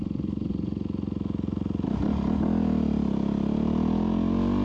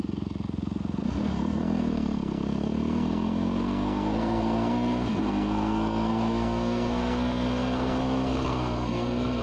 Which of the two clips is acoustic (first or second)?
first